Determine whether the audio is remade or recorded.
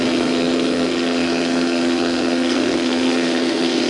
remade